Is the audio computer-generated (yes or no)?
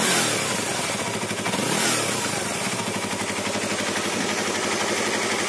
no